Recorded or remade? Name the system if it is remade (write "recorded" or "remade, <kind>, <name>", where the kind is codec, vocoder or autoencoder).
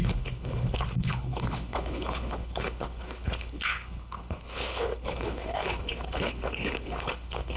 remade, codec, HILCodec